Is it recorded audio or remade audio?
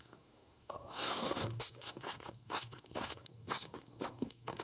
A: remade